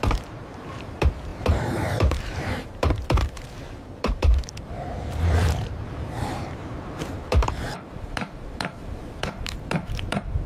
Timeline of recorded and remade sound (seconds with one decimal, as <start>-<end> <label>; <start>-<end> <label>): 0.0-10.5 remade